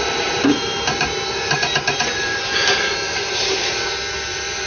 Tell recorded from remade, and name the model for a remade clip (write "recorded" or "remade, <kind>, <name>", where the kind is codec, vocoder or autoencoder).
remade, vocoder, BigVGAN v2